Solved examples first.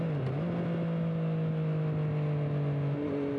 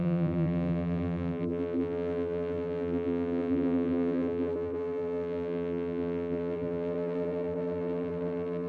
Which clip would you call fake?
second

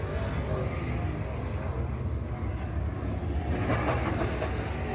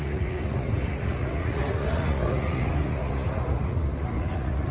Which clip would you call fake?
second